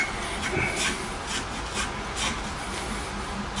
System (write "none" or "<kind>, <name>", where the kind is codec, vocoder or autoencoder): none